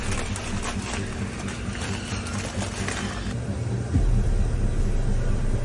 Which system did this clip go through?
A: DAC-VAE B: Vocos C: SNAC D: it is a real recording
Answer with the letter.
D